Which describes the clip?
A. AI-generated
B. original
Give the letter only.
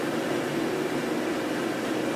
B